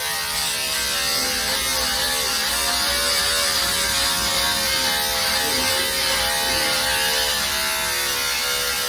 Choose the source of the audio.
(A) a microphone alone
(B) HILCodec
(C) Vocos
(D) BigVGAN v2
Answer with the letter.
A